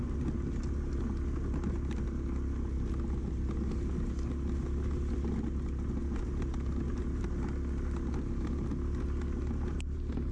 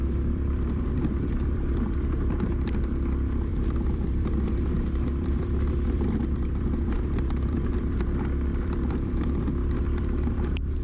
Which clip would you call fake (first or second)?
second